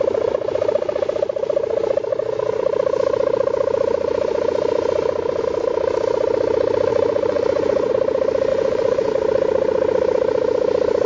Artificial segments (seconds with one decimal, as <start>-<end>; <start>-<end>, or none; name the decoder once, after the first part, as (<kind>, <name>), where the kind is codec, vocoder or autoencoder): 6.9-7.9 (vocoder, Vocos); 8.5-9.1